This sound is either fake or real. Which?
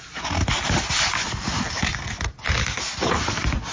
real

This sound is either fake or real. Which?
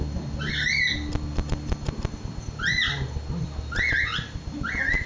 real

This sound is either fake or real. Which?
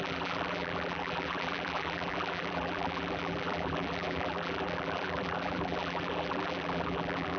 fake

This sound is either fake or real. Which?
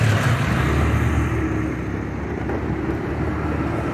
real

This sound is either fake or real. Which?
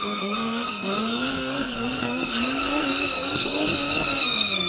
fake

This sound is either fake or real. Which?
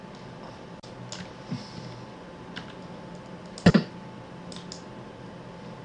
real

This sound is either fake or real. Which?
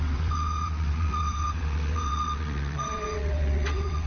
fake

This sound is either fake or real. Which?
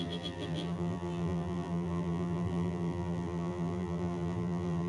fake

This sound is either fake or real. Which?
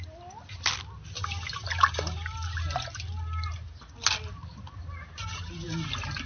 real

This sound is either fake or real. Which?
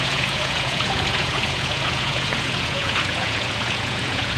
fake